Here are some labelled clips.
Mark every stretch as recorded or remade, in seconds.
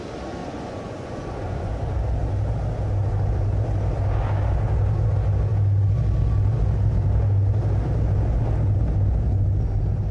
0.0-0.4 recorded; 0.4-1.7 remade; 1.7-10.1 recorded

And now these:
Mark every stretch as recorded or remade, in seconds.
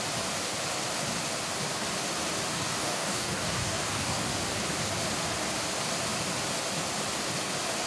0.0-2.5 recorded; 2.5-4.3 remade; 4.3-7.9 recorded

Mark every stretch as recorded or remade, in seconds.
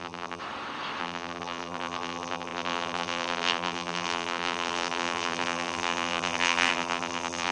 0.0-0.4 remade; 0.4-1.0 recorded; 1.0-7.5 remade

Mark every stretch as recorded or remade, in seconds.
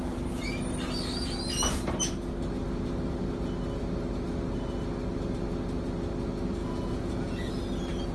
0.0-6.6 recorded; 6.6-7.5 remade; 7.5-8.1 recorded